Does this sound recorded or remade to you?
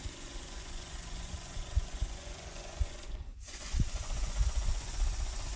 remade